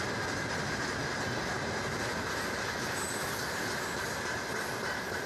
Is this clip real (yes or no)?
yes